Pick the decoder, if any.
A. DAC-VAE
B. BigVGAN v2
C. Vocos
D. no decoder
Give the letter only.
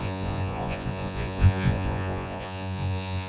C